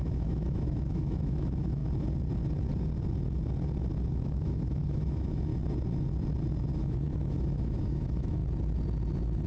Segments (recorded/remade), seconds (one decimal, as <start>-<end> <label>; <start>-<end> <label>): 0.0-1.8 remade; 1.8-4.1 recorded; 4.1-5.5 remade; 5.5-6.8 recorded; 6.8-8.4 remade; 8.4-9.5 recorded